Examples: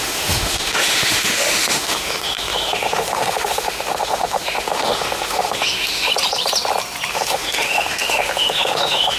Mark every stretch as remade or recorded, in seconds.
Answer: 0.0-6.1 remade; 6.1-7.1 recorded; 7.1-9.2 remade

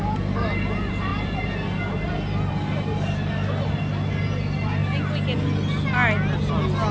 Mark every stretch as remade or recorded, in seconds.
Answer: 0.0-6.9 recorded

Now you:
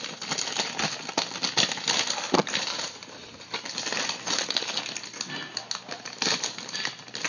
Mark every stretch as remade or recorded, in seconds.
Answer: 0.0-7.3 recorded

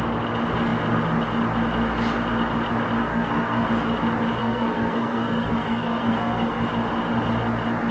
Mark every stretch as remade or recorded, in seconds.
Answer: 0.0-3.0 recorded; 3.0-3.7 remade; 3.7-4.4 recorded; 4.4-6.7 remade; 6.7-7.9 recorded

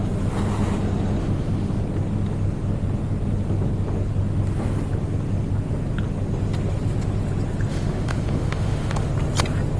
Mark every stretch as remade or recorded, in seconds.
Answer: 0.0-1.2 recorded; 1.2-1.8 remade; 1.8-7.7 recorded; 7.7-9.1 remade; 9.1-9.8 recorded